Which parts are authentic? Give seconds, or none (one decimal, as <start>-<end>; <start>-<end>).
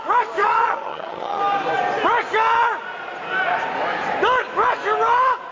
0.0-0.4; 1.4-5.5